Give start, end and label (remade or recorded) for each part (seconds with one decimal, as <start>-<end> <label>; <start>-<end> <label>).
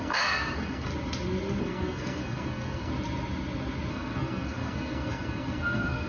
0.0-0.9 remade; 0.9-1.6 recorded; 1.6-2.9 remade; 2.9-3.9 recorded; 3.9-6.1 remade